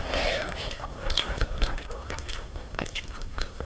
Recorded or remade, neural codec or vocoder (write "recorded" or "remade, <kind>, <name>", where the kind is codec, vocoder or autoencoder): remade, codec, SNAC